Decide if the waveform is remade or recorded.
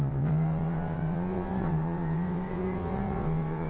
remade